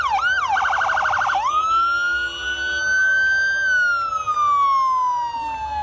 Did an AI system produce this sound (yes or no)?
no